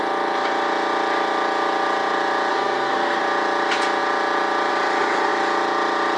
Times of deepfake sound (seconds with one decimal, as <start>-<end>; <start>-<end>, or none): 2.5-3.2